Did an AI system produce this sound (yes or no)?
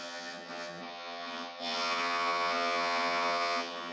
yes